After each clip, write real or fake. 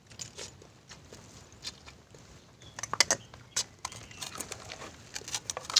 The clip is real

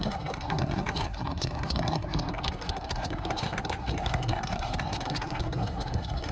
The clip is fake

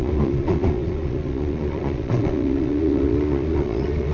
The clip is fake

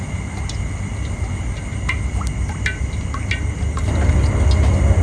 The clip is real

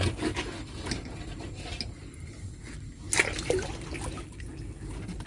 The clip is real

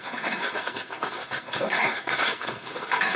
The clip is fake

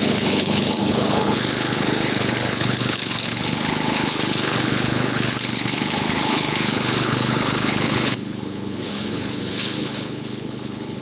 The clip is fake